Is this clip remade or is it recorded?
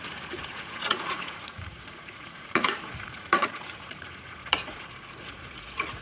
remade